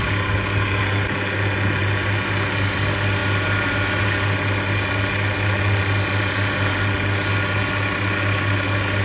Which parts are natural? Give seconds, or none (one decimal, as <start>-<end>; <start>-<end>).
0.0-9.0